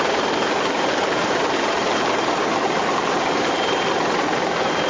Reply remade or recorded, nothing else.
remade